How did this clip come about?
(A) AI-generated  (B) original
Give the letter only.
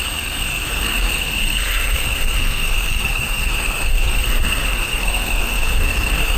A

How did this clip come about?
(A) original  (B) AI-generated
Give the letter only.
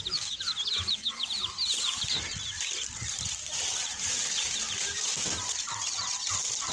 A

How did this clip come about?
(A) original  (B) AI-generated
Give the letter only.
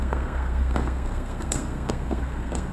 B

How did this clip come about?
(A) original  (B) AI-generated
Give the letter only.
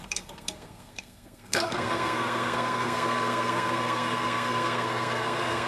B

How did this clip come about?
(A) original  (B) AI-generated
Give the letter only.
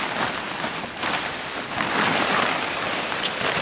A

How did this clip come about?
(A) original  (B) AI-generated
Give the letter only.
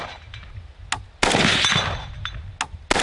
A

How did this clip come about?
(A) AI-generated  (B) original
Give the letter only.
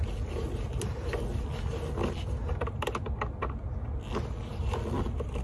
B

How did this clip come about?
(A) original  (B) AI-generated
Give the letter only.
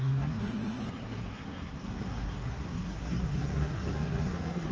B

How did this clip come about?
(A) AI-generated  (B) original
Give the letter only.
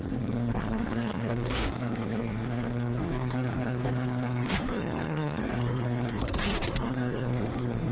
A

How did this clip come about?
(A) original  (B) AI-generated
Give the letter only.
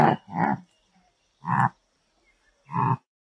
A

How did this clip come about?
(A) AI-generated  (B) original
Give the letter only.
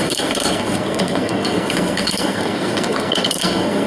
A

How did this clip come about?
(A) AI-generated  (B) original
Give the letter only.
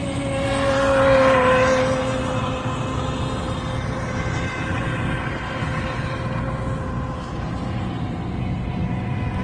B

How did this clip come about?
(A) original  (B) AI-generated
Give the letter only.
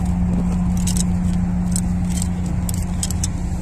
A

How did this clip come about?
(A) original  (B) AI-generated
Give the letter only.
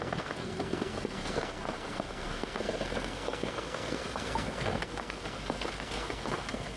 B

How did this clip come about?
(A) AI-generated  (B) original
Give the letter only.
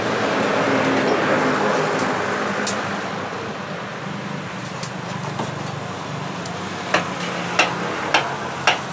B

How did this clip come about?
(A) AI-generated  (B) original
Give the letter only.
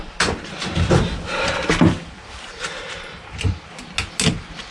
B